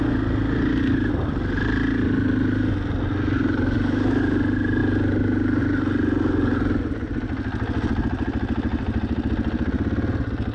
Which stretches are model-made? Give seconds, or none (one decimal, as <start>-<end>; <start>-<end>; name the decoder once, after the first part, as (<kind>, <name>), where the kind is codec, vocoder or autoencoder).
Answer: 8.7-9.3 (vocoder, BigVGAN v2)